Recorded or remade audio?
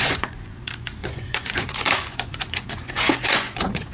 remade